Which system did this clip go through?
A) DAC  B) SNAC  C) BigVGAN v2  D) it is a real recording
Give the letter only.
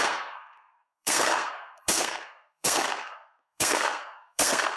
B